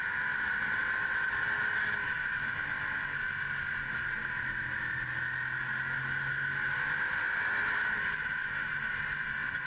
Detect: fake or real real